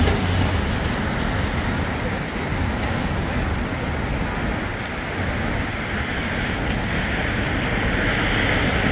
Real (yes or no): yes